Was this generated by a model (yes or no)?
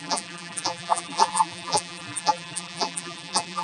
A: yes